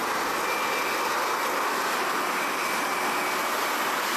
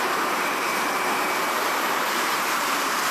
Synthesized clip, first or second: second